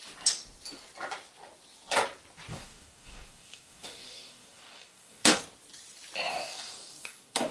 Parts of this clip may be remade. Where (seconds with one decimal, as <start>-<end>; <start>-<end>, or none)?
2.5-5.4; 6.3-7.5